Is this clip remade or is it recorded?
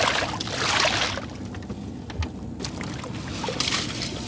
recorded